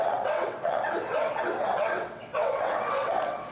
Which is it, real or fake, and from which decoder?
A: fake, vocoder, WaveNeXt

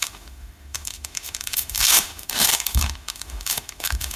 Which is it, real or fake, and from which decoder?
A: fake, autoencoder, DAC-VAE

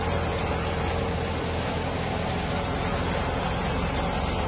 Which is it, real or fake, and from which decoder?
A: real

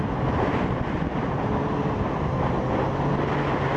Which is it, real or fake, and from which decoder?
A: real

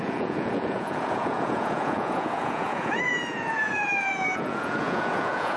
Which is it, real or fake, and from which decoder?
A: fake, vocoder, Vocos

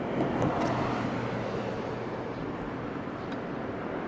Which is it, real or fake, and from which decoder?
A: real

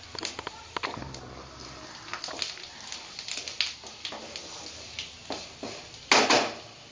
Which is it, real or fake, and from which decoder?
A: real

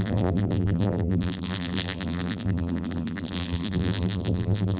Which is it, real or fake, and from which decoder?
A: fake, vocoder, BigVGAN v2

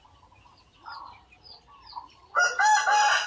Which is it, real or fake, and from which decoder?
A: real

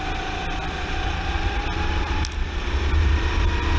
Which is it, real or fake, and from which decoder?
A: real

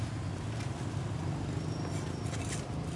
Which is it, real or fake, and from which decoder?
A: real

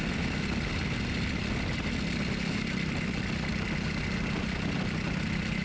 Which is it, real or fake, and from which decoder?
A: real